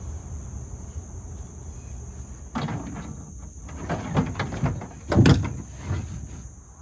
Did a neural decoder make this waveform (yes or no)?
no